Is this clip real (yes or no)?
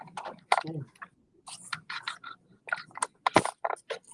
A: yes